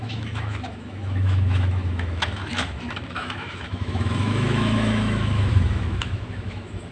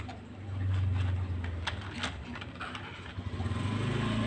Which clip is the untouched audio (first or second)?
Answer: second